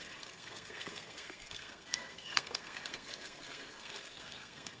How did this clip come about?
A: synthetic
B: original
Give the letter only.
A